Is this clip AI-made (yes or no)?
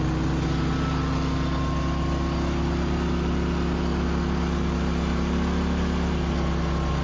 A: no